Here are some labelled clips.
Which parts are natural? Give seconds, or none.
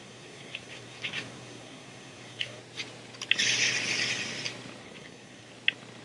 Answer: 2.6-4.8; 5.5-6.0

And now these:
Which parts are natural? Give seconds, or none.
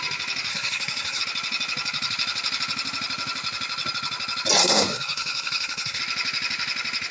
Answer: 0.0-0.5; 1.2-4.6; 6.0-7.1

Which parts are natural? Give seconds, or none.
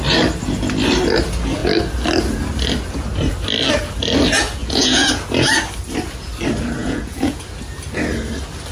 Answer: 0.0-4.6; 5.1-6.8; 7.4-8.7